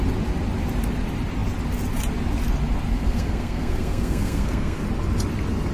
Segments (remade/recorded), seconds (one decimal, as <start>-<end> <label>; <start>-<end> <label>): 0.0-2.9 recorded; 2.9-4.8 remade; 4.8-5.7 recorded